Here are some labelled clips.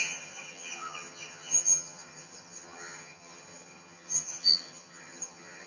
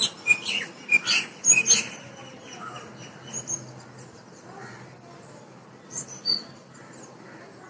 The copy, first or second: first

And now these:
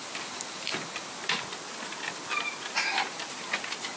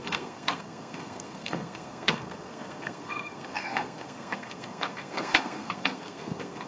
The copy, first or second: second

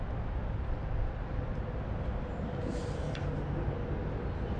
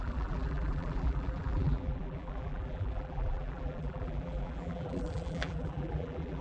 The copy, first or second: second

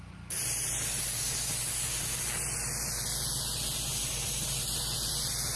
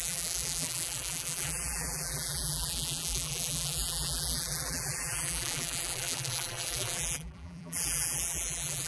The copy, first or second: second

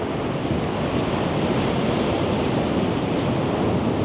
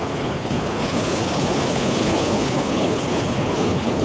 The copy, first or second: second